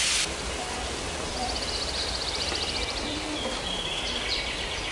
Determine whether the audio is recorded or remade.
remade